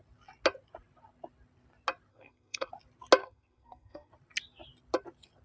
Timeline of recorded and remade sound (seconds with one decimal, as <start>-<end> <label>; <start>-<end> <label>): 0.0-2.1 recorded; 2.1-2.7 remade; 2.7-3.2 recorded; 3.2-4.1 remade; 4.1-5.4 recorded